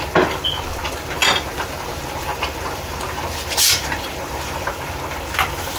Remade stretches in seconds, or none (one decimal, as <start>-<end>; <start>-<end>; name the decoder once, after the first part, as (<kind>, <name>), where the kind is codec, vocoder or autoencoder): 1.2-4.7 (vocoder, BigVGAN v2)